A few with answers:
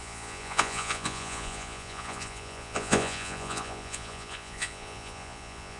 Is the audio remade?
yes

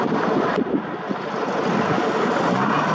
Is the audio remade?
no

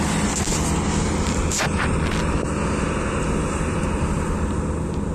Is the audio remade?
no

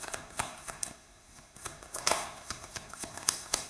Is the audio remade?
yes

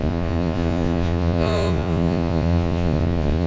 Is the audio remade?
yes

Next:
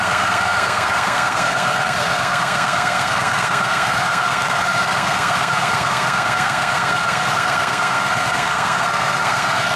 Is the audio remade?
yes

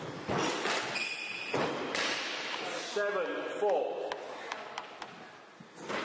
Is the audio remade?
no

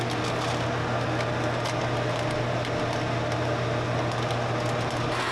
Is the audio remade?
no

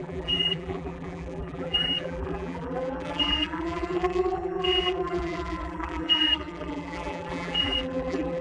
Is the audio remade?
yes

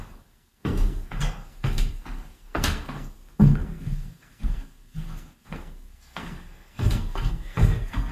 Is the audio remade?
yes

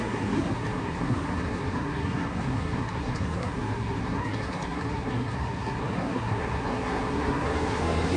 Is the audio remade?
yes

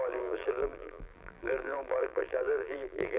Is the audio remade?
yes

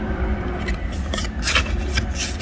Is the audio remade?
no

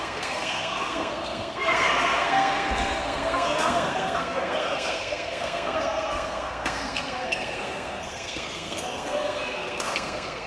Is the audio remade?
yes